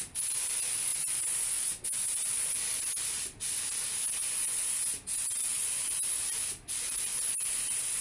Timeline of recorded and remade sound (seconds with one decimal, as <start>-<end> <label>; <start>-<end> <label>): 0.0-8.0 recorded